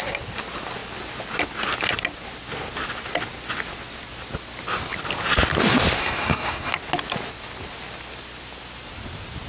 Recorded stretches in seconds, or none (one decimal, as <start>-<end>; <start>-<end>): 0.0-6.0; 6.7-9.5